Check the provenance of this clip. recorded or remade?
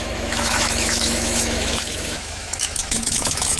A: remade